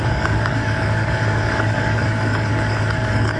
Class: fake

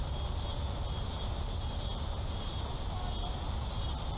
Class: real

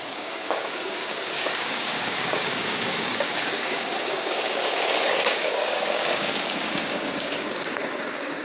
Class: fake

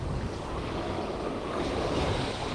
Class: fake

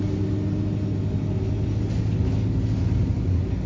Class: real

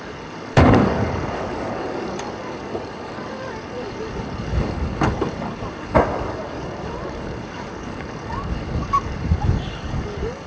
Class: fake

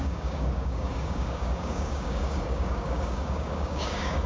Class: fake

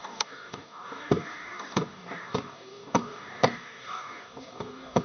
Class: fake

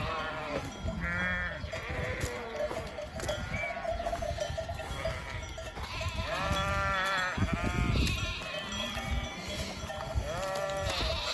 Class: real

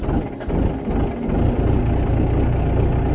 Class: real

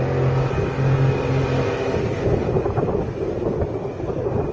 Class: real